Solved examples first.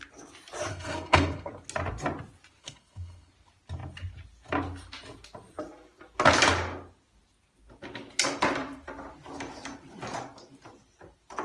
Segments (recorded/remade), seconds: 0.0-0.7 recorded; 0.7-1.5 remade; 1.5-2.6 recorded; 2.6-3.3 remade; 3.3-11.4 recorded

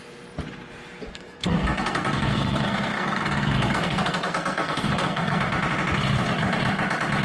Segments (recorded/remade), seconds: 0.0-1.1 recorded; 1.1-5.4 remade; 5.4-7.2 recorded